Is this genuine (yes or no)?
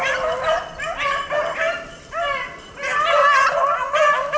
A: yes